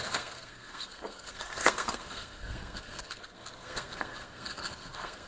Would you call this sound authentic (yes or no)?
no